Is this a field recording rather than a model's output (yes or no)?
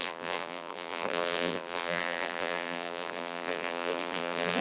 no